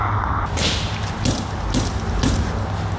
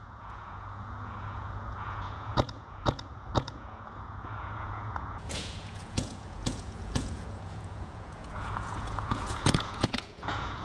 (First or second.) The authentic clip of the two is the first